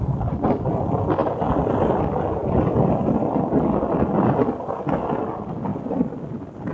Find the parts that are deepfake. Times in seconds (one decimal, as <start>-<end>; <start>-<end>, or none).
none